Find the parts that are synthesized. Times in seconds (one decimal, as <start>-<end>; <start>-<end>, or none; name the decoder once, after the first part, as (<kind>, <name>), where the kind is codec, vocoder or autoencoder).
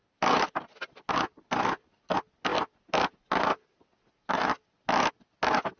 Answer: none